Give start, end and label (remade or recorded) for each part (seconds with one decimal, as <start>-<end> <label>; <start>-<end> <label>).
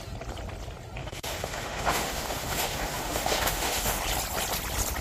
0.0-1.0 recorded; 1.0-4.0 remade; 4.0-5.0 recorded